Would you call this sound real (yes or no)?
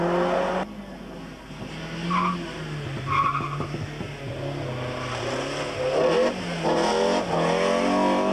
yes